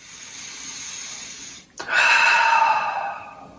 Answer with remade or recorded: recorded